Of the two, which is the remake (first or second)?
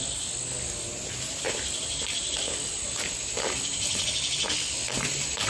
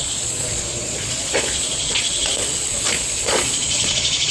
second